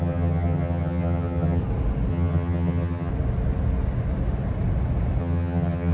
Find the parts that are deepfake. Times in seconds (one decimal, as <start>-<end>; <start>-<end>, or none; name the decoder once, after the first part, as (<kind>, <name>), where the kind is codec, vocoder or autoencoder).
0.0-1.6 (vocoder, HiFi-GAN); 2.1-3.1; 5.2-5.9